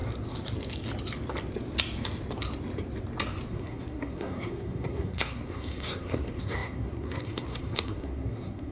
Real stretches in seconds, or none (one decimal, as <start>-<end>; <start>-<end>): 0.0-3.5